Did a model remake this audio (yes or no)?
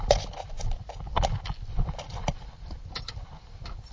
no